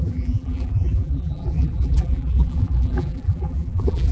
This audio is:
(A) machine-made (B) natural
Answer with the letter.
A